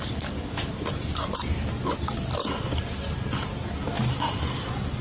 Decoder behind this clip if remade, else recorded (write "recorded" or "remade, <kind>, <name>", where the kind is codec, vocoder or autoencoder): recorded